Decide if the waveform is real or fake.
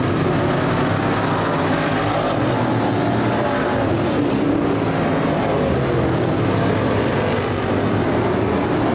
real